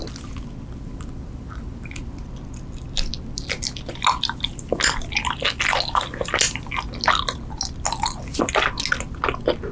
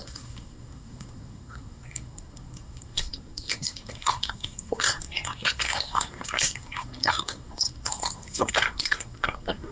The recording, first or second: first